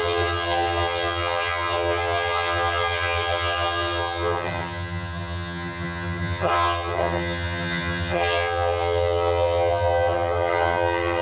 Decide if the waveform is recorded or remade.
remade